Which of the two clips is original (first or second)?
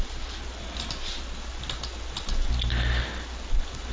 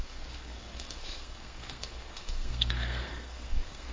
first